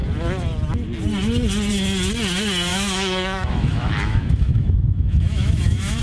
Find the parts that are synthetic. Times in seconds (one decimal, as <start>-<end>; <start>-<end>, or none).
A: 2.7-6.0